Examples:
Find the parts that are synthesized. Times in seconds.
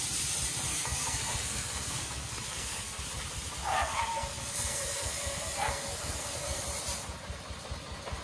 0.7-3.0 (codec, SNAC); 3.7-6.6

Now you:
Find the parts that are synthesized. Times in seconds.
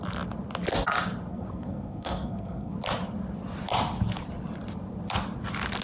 1.3-2.7 (codec, SNAC)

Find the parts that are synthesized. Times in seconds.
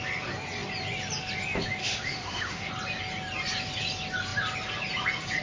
1.8-2.7 (autoencoder, DAC-VAE)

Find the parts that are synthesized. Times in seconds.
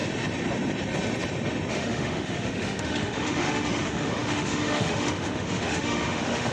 1.7-6.5 (autoencoder, DAC-VAE)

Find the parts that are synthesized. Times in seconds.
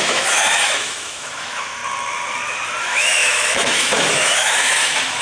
0.0-1.8 (autoencoder, DAC-VAE); 2.8-5.2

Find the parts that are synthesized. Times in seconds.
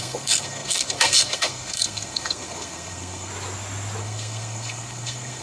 0.0-3.3 (codec, SNAC); 4.0-5.4